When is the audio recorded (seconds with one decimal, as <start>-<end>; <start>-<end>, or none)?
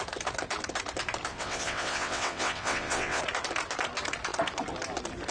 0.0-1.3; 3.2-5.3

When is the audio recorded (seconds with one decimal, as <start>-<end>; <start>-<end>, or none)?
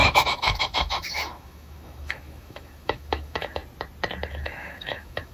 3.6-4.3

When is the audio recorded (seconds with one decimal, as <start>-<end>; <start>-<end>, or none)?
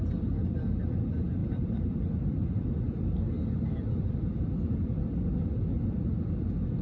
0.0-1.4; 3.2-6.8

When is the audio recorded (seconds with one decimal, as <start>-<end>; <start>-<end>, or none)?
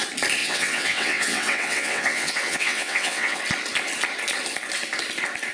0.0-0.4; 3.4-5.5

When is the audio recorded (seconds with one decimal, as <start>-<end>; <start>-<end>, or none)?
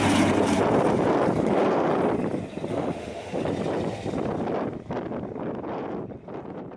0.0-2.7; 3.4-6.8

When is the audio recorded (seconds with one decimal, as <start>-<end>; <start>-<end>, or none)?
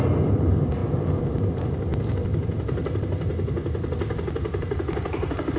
0.0-5.6